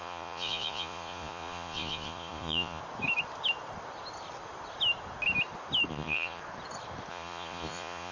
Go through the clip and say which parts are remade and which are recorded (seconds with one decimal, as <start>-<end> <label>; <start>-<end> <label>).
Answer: 0.0-2.8 remade; 2.8-5.9 recorded; 5.9-6.4 remade; 6.4-7.1 recorded; 7.1-8.1 remade